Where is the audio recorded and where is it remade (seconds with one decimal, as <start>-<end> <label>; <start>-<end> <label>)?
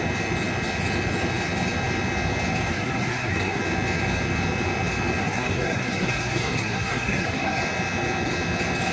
0.0-2.7 recorded; 2.7-3.6 remade; 3.6-5.2 recorded; 5.2-7.6 remade; 7.6-8.9 recorded